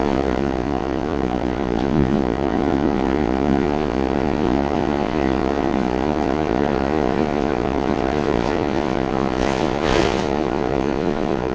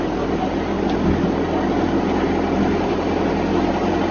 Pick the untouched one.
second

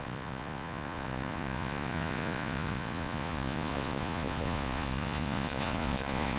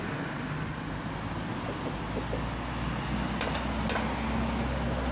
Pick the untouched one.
second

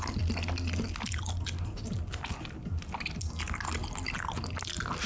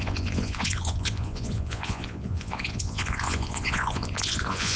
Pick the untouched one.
first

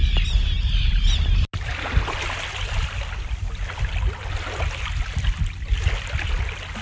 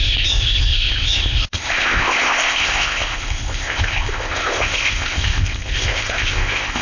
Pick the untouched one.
first